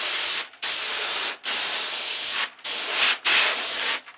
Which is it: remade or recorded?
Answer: recorded